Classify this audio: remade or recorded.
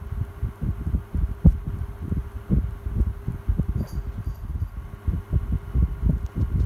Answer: recorded